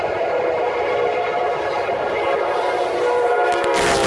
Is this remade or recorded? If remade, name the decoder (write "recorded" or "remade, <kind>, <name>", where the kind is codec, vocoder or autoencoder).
remade, vocoder, BigVGAN v2